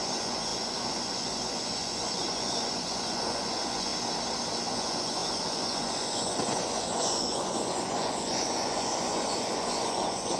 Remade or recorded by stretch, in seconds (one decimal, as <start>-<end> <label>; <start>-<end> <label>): 0.0-3.9 remade; 3.9-4.7 recorded; 4.7-10.4 remade